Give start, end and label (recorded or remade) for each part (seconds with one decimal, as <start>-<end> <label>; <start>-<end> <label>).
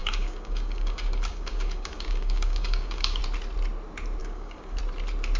0.0-3.2 remade; 3.2-4.2 recorded; 4.2-4.8 remade; 4.8-5.4 recorded